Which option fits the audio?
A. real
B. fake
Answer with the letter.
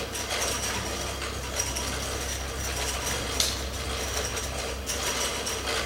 A